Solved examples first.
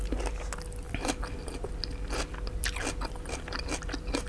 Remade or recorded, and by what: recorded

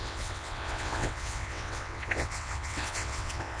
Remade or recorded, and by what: remade, vocoder, WaveNeXt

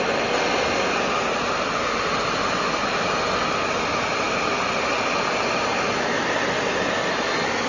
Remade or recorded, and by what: recorded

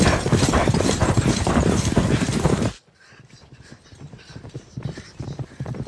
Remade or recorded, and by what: recorded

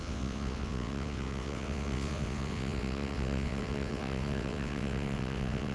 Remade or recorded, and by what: remade, vocoder, WaveNeXt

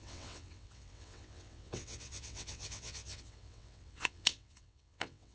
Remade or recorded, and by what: remade, vocoder, WaveNeXt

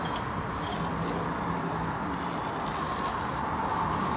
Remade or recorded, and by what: recorded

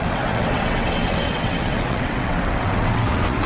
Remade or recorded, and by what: remade, vocoder, WaveNeXt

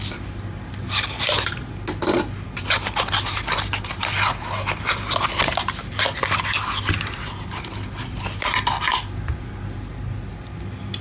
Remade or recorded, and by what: recorded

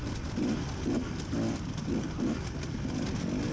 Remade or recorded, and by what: recorded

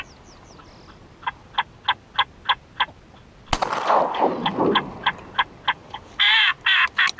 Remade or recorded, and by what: recorded